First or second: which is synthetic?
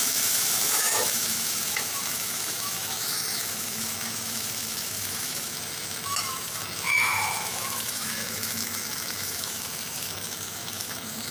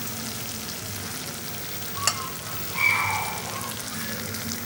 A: first